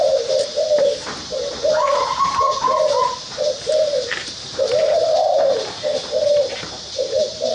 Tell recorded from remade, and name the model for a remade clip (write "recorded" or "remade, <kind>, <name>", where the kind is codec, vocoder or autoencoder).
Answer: remade, vocoder, BigVGAN v2